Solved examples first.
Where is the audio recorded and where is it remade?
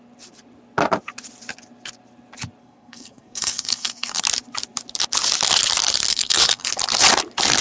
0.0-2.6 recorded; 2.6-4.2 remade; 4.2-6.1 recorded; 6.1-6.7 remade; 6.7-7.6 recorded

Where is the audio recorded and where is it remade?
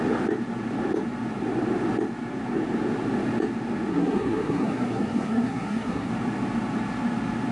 0.0-3.9 recorded; 3.9-6.1 remade; 6.1-7.5 recorded